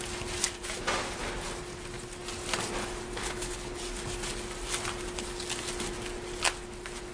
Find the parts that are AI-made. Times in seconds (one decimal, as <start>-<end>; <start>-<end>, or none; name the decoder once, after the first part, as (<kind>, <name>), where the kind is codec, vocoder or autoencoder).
3.2-3.8 (codec, HILCodec)

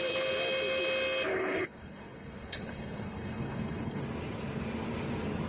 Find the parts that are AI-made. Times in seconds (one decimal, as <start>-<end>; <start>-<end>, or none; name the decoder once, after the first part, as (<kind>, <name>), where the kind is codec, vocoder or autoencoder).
1.3-4.0 (codec, HILCodec)

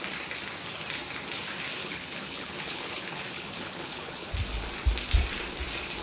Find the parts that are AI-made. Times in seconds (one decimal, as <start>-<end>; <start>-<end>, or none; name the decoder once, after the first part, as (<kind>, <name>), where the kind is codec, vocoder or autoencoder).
1.8-4.3 (codec, HILCodec)

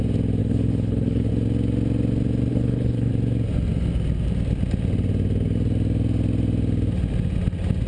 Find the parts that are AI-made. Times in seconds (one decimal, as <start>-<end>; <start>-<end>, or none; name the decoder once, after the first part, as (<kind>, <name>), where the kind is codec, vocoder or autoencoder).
0.4-1.3 (codec, HILCodec); 2.5-3.1